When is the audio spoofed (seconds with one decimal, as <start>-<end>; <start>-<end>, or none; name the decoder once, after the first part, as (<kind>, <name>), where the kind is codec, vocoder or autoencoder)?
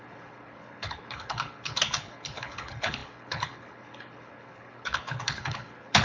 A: 0.0-6.0 (codec, HILCodec)